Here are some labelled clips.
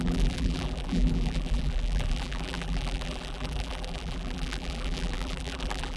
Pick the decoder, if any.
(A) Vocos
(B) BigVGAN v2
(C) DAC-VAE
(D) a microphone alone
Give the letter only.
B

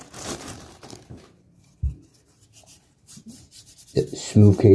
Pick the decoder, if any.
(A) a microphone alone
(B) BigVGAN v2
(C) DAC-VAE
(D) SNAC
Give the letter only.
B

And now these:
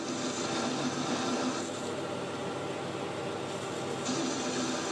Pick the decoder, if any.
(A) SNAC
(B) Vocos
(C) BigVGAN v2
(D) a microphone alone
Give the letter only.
D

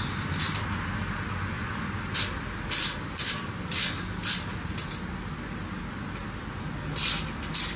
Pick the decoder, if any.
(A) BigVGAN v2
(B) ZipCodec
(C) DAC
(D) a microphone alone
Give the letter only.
D